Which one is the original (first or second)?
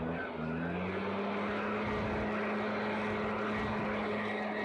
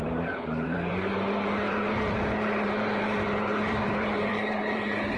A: first